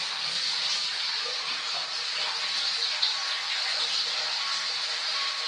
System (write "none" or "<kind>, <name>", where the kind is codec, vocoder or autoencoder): none